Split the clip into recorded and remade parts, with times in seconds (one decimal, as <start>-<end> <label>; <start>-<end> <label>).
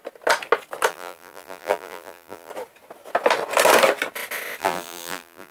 0.0-0.9 recorded; 0.9-2.5 remade; 2.5-4.6 recorded; 4.6-5.5 remade